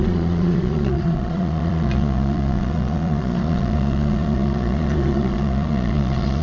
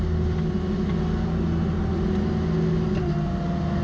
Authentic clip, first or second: second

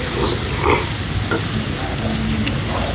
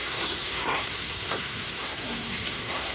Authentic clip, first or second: first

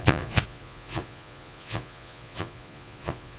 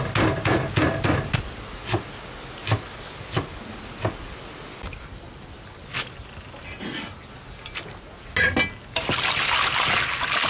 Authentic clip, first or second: second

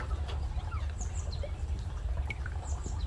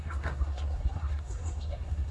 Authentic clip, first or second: first